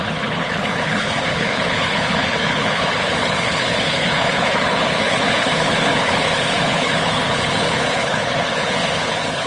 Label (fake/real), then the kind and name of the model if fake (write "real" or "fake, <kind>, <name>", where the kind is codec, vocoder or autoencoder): fake, codec, HILCodec